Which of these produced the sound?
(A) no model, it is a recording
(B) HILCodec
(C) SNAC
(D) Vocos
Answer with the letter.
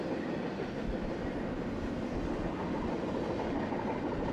A